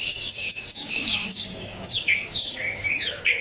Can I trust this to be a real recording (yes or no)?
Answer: no